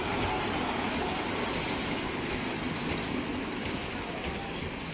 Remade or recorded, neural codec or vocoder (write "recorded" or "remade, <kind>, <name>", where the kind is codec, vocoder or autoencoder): recorded